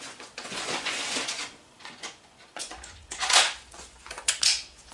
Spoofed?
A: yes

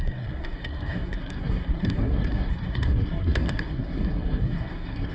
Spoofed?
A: yes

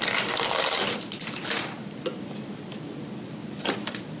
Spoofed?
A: yes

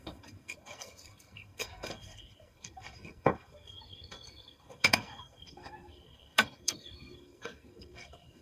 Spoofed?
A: yes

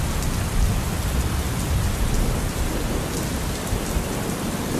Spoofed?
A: no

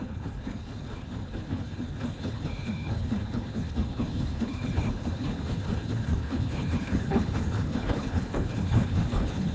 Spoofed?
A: yes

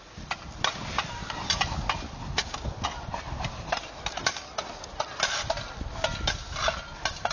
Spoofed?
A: no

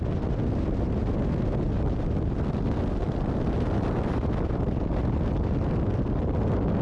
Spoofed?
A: no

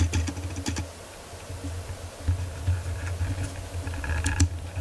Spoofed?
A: no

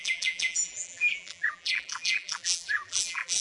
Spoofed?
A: yes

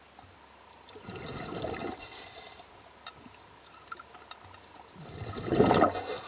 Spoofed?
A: no